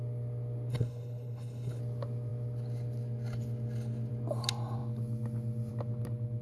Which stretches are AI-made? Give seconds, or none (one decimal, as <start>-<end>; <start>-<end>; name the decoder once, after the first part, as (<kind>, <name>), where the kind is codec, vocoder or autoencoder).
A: 0.7-1.8 (codec, HILCodec)